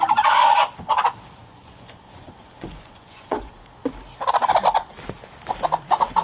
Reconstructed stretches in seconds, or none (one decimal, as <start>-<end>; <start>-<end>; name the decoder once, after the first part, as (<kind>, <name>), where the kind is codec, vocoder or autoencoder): 1.4-3.5 (vocoder, Vocos)